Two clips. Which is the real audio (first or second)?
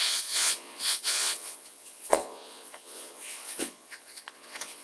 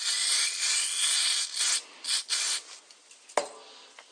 second